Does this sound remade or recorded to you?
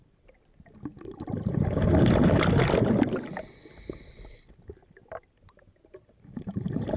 recorded